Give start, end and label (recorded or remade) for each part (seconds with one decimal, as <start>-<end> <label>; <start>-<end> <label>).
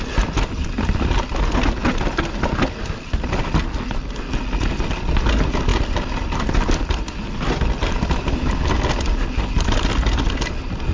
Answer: 0.0-10.9 recorded